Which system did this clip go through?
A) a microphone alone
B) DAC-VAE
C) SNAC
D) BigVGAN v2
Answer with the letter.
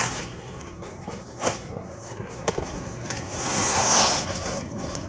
C